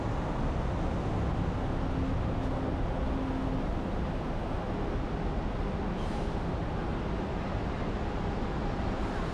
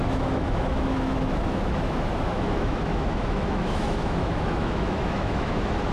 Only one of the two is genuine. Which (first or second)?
first